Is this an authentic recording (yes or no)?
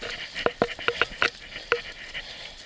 yes